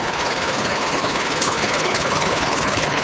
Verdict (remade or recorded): remade